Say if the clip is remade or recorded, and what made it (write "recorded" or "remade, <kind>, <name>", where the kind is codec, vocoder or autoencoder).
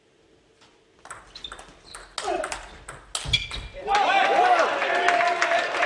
recorded